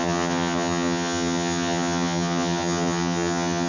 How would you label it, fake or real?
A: fake